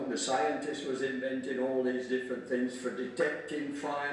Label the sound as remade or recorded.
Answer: recorded